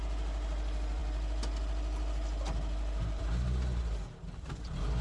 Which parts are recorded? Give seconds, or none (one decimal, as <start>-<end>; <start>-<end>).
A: 0.0-5.0